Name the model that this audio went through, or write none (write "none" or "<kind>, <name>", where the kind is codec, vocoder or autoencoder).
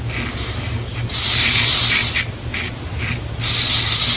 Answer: none